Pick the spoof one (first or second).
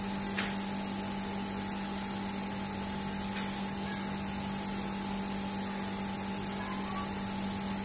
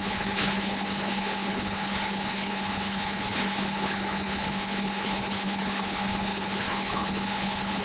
second